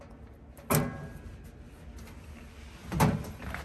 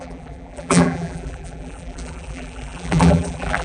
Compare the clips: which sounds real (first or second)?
first